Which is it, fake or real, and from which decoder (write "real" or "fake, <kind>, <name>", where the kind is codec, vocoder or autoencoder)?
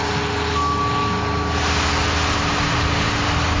real